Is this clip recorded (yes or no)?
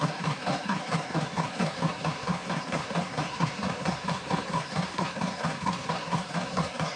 no